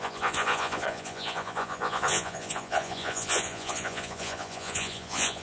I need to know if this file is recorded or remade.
remade